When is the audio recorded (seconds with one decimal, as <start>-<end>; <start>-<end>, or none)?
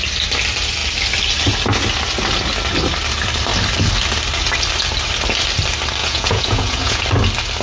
0.0-6.0; 7.0-7.6